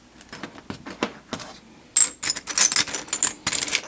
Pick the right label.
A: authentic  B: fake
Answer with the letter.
A